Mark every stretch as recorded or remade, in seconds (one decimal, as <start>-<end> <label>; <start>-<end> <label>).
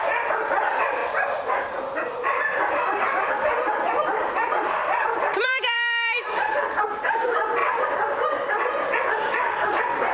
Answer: 0.0-1.0 remade; 1.0-3.3 recorded; 3.3-7.6 remade; 7.6-8.5 recorded; 8.5-10.1 remade